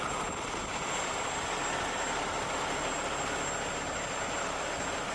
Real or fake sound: real